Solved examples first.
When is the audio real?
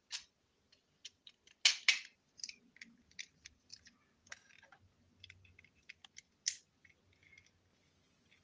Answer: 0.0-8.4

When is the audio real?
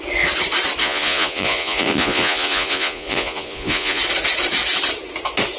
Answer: 0.0-0.8; 4.0-5.6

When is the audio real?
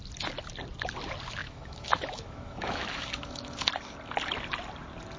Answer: 0.0-1.4; 3.7-5.2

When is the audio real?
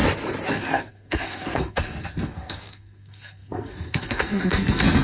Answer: 0.0-0.5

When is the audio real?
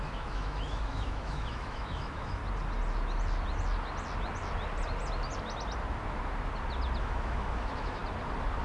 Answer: 2.4-7.0; 8.0-8.6